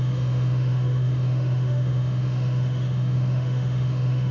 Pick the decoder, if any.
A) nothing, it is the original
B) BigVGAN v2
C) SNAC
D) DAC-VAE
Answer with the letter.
D